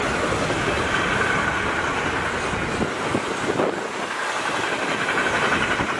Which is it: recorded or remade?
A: recorded